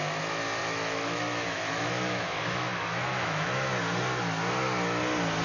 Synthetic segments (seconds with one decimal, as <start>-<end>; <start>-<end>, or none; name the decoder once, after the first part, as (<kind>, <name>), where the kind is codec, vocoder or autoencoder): 0.6-3.8 (autoencoder, DAC-VAE)

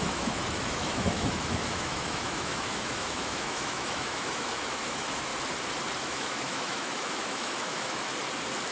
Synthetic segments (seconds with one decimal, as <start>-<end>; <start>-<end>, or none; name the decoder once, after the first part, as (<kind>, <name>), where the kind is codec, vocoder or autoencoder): 0.0-5.3 (autoencoder, DAC-VAE); 6.0-8.1

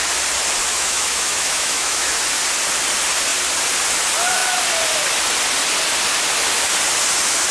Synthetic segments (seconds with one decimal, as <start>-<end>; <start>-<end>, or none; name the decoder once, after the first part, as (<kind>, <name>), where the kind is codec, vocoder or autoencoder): 0.7-2.1 (autoencoder, DAC-VAE)

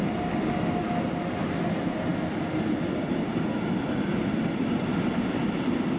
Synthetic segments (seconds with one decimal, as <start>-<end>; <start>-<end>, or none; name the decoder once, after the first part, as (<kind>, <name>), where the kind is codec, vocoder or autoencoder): none

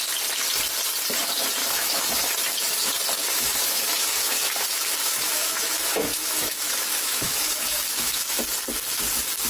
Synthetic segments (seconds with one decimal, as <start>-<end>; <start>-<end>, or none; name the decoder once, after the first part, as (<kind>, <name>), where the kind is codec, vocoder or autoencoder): 1.6-2.3 (autoencoder, DAC-VAE); 3.2-4.4; 5.0-8.4

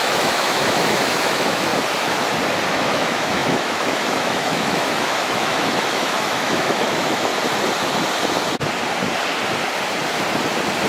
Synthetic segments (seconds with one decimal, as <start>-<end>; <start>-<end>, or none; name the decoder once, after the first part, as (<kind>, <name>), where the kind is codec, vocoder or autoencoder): 0.0-1.7 (autoencoder, DAC-VAE); 2.7-7.3

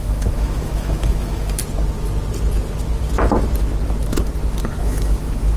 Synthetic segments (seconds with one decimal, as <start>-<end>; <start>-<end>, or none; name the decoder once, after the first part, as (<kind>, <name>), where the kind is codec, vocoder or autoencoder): 0.0-1.6 (autoencoder, DAC-VAE); 4.8-5.6